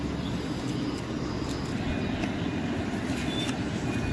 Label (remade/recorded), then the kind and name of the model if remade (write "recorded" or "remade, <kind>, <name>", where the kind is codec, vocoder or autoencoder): recorded